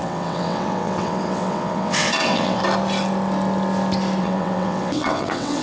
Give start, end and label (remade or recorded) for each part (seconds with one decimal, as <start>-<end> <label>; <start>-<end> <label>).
0.0-2.6 remade; 2.6-4.2 recorded; 4.2-5.6 remade

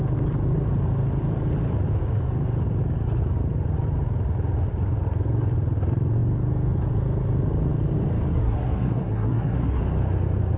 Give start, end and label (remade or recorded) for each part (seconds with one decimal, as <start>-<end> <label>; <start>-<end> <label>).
0.0-8.3 recorded; 8.3-9.8 remade; 9.8-10.6 recorded

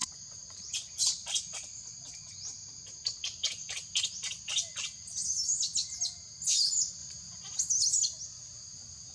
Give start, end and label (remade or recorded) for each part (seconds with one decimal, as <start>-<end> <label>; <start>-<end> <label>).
0.0-1.1 remade; 1.1-7.0 recorded; 7.0-7.7 remade; 7.7-9.1 recorded

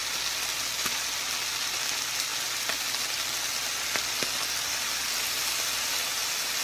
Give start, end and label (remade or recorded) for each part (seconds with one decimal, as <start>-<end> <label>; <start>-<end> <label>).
0.0-6.6 recorded

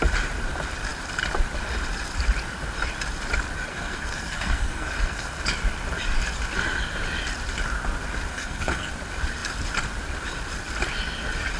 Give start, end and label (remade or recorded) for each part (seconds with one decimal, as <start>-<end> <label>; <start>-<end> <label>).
0.0-3.7 recorded; 3.7-5.4 remade; 5.4-8.3 recorded; 8.3-8.9 remade; 8.9-11.6 recorded